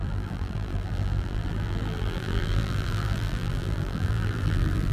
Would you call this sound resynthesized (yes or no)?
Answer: yes